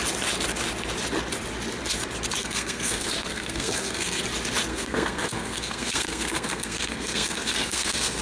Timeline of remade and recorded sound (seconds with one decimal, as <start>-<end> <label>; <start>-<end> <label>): 0.0-2.4 recorded; 2.4-4.2 remade; 4.2-4.7 recorded; 4.7-8.2 remade